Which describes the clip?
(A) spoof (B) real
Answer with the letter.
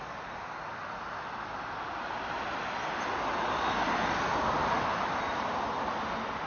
B